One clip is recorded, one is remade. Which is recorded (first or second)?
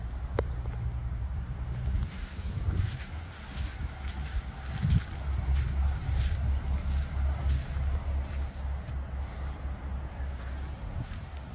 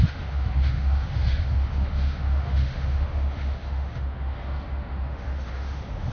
first